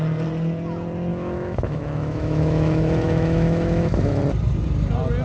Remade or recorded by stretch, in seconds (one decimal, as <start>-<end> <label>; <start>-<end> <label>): 0.0-1.1 recorded; 1.1-4.2 remade; 4.2-5.2 recorded